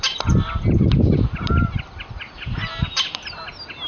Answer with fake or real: real